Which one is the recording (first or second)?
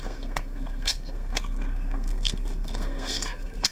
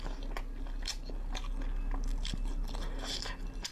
second